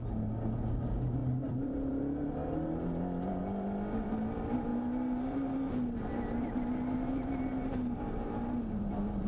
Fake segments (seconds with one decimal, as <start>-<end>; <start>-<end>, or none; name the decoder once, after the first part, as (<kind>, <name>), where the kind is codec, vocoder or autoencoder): 1.2-2.0 (vocoder, BigVGAN v2); 4.7-8.9